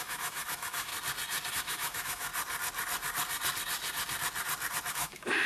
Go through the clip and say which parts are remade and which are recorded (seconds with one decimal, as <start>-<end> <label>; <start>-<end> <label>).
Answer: 0.0-0.9 remade; 0.9-1.5 recorded; 1.5-2.3 remade; 2.3-4.9 recorded; 4.9-5.5 remade